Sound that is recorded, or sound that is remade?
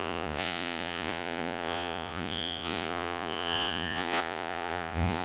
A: remade